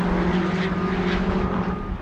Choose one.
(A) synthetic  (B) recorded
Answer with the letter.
B